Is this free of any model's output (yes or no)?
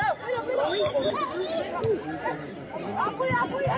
no